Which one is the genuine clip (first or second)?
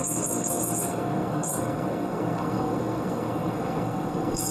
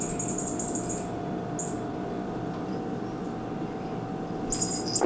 second